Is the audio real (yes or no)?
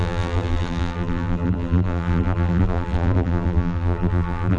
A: no